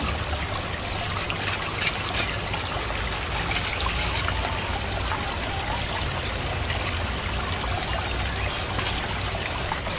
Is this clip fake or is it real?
real